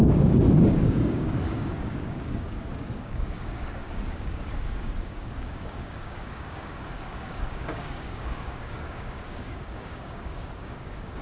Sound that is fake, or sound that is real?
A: fake